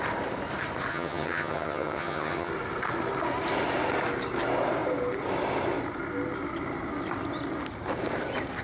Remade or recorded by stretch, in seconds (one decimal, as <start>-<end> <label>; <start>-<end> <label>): 0.0-0.9 recorded; 0.9-2.5 remade; 2.5-8.6 recorded